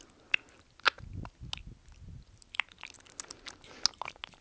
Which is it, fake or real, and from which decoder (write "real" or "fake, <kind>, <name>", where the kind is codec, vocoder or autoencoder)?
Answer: real